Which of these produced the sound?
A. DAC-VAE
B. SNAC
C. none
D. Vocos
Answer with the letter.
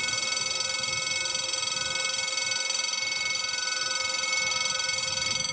C